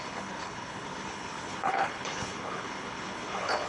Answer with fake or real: fake